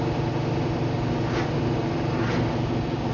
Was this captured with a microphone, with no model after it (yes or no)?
yes